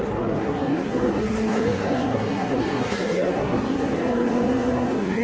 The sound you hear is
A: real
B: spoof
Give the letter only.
B